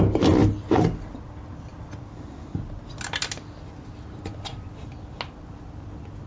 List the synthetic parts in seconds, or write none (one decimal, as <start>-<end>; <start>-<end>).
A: 0.4-1.1